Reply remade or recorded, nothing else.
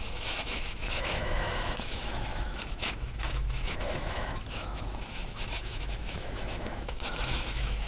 remade